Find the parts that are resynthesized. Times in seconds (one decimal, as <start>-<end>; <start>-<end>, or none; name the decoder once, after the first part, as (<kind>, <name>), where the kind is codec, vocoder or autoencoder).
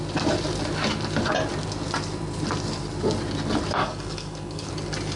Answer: 3.8-4.7 (codec, DAC)